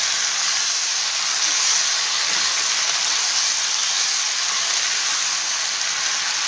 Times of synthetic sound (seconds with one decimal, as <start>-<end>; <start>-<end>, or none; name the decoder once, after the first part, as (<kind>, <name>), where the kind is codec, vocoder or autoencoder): none